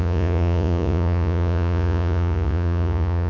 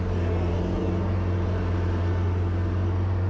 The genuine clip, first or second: second